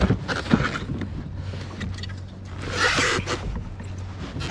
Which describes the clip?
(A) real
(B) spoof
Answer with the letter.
A